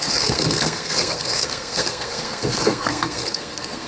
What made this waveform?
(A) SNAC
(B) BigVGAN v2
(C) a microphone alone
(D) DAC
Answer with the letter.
A